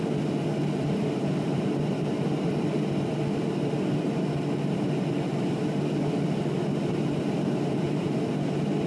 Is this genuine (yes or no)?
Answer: yes